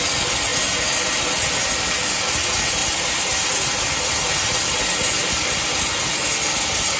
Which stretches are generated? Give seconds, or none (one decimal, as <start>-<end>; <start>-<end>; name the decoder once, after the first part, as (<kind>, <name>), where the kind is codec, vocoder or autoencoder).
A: 2.8-5.3 (vocoder, BigVGAN v2)